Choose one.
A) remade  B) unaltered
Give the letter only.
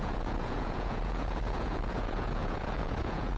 A